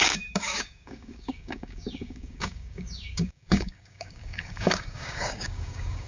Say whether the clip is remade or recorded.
remade